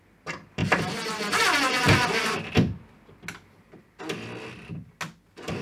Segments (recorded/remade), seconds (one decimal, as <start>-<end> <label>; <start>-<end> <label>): 0.0-5.6 recorded